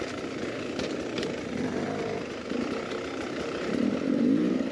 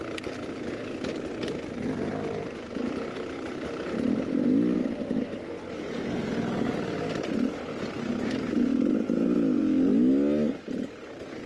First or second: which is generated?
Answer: first